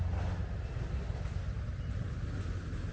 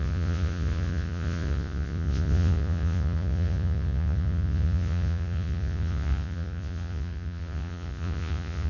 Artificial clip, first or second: second